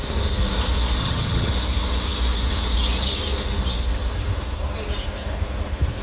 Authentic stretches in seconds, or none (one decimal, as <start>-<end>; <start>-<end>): 0.0-1.0; 1.5-6.0